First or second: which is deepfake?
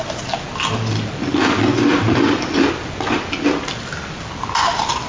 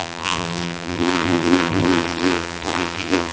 second